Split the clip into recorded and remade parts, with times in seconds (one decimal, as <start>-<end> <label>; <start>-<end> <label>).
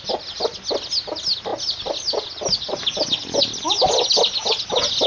0.0-5.1 recorded